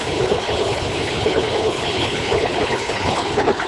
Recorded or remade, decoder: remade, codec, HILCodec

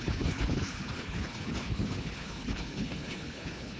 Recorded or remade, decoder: remade, codec, HILCodec